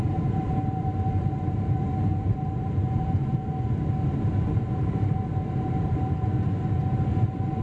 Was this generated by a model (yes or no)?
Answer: yes